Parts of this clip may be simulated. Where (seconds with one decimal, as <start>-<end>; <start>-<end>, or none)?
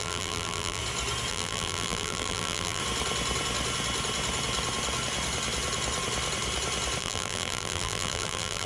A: 0.0-0.8; 1.3-2.8; 7.0-8.7